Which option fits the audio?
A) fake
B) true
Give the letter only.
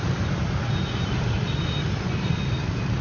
B